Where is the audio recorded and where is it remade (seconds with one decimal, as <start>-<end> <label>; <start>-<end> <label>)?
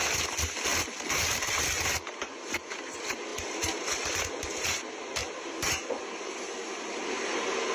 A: 0.0-1.3 recorded; 1.3-7.7 remade